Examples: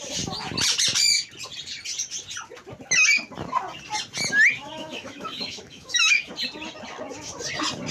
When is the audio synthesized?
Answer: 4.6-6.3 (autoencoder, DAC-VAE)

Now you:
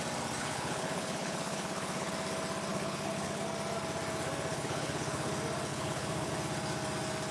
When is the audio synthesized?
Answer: 0.4-2.1 (codec, HILCodec); 2.7-3.4; 4.5-5.3; 5.7-6.3

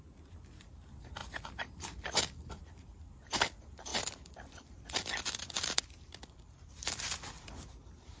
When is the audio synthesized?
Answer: 0.0-8.2 (vocoder, BigVGAN v2)

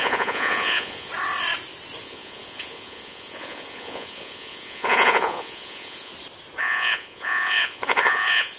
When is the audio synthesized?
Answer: 0.0-1.1 (vocoder, Vocos); 2.0-6.1; 6.6-8.6

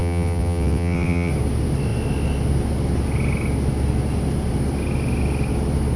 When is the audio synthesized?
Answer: 0.0-1.3 (vocoder, WaveNeXt)

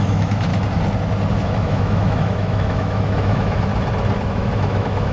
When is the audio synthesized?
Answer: 0.0-0.5 (autoencoder, DAC-VAE); 1.3-3.7; 4.3-5.1

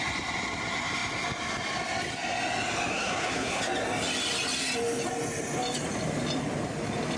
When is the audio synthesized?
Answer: 2.9-3.6 (codec, SNAC)